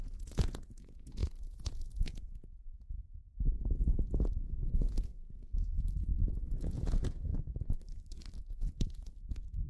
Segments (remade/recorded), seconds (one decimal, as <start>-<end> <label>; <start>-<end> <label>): 0.0-5.1 remade; 5.1-6.3 recorded; 6.3-7.3 remade; 7.3-8.4 recorded; 8.4-9.7 remade